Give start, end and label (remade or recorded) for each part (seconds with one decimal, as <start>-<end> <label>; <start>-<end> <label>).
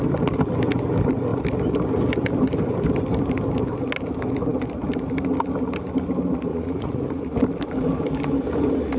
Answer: 0.0-6.5 recorded; 6.5-7.2 remade; 7.2-9.0 recorded